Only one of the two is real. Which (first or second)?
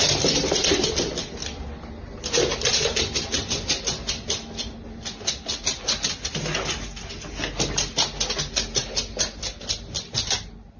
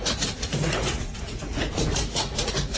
first